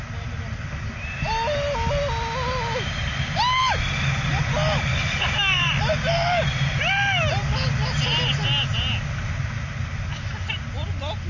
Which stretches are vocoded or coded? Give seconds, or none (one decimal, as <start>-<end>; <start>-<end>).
none